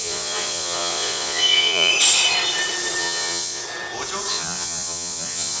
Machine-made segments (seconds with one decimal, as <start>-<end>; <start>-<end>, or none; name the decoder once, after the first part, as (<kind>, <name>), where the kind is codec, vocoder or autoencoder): 0.0-1.9 (vocoder, Vocos); 3.0-3.6; 4.3-5.6